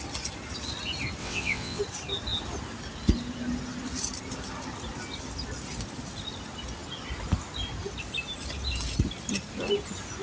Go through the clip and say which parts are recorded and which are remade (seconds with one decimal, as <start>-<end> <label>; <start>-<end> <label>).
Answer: 0.0-1.2 recorded; 1.2-1.8 remade; 1.8-10.2 recorded